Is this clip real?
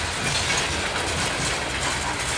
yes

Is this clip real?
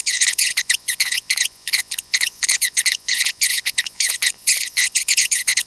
no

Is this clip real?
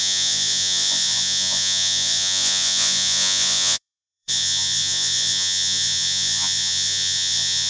no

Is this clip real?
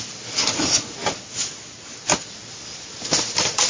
yes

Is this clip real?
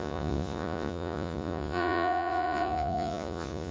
no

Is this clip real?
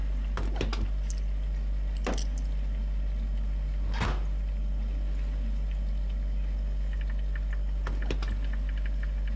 yes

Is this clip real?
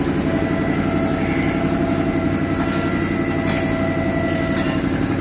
yes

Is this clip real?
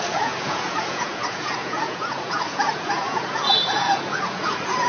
no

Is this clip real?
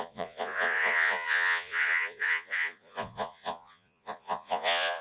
no